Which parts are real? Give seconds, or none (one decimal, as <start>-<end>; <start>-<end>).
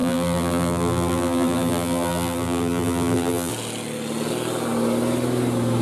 3.5-5.8